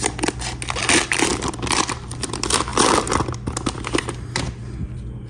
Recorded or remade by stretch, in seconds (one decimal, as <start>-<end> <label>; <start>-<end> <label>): 0.0-5.3 recorded